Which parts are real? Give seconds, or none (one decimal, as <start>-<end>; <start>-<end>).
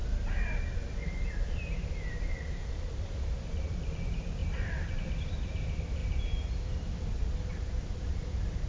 4.4-4.9; 6.0-7.0